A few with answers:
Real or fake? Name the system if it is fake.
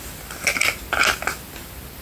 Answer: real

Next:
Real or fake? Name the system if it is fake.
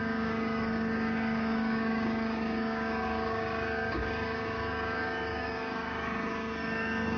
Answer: fake, codec, DAC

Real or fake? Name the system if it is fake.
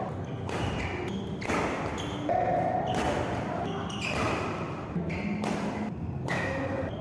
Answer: real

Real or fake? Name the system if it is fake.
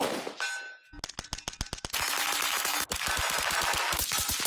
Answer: real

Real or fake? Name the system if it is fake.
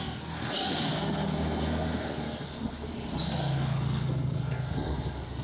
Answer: fake, codec, SNAC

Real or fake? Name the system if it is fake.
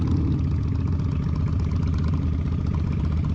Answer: real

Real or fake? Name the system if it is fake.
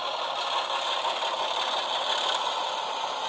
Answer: real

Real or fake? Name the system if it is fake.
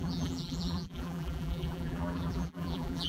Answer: fake, vocoder, BigVGAN v2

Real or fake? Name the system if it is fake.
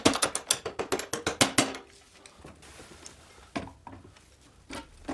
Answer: real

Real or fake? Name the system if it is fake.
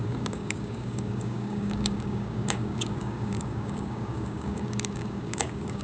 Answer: fake, codec, DAC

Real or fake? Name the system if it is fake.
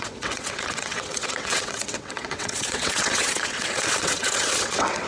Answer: fake, vocoder, WaveNeXt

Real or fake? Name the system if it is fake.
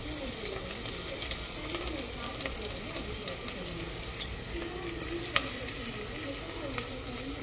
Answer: real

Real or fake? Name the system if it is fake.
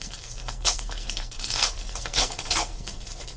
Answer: fake, codec, SNAC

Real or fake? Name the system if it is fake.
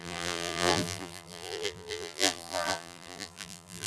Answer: fake, vocoder, BigVGAN v2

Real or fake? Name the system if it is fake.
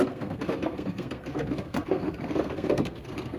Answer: fake, codec, SNAC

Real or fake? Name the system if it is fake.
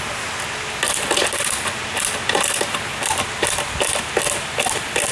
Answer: real